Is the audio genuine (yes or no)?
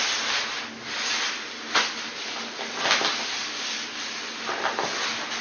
yes